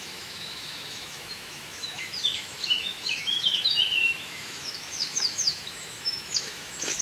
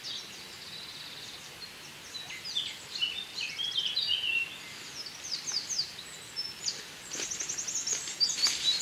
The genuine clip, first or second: second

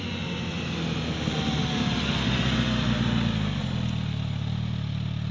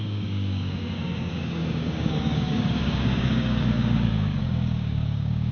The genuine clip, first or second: first